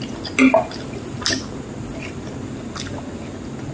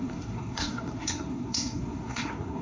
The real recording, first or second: first